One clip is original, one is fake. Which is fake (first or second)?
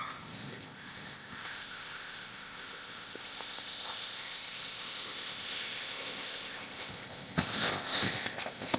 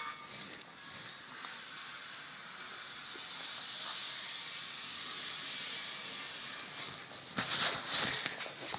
first